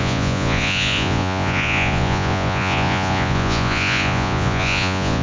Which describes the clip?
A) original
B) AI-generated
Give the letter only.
B